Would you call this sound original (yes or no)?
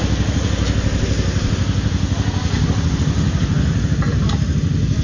yes